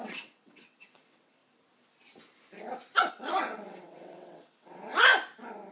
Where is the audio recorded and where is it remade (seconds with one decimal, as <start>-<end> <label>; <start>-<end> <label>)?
0.0-1.4 remade; 1.4-3.1 recorded; 3.1-5.1 remade; 5.1-5.7 recorded